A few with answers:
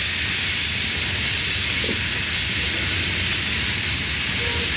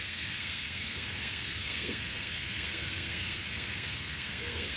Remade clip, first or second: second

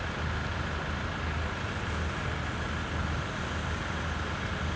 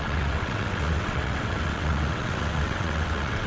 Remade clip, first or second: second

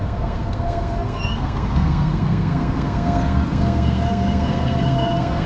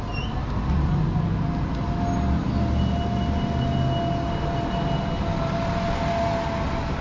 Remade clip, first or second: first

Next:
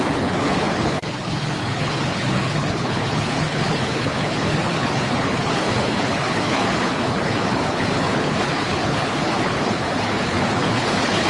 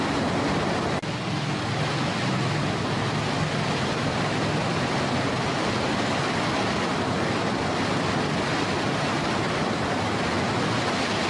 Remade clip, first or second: first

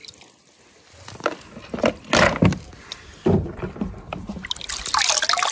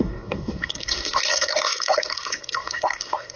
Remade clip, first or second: second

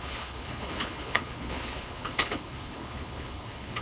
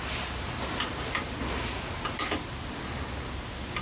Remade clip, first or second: first